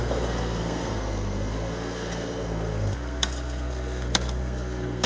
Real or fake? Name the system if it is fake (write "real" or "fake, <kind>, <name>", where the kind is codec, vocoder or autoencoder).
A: fake, codec, SNAC